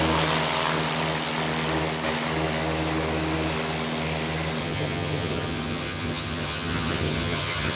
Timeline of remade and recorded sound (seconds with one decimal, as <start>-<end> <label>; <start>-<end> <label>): 0.0-4.6 recorded; 4.6-7.8 remade